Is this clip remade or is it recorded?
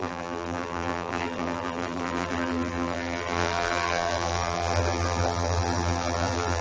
remade